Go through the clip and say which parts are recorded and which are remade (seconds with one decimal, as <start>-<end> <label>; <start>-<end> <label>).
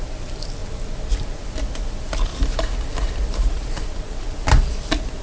0.0-2.3 recorded; 2.3-3.8 remade; 3.8-5.2 recorded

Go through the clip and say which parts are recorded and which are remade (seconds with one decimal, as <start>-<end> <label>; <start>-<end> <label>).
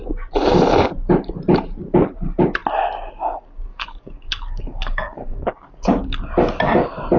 0.0-3.7 recorded; 3.7-6.2 remade; 6.2-7.2 recorded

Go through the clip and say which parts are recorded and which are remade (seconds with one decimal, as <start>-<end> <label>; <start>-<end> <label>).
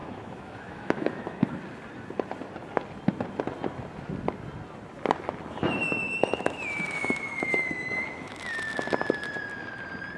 0.0-1.5 remade; 1.5-5.8 recorded; 5.8-8.4 remade; 8.4-10.2 recorded